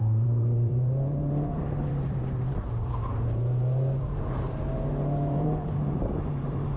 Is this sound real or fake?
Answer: fake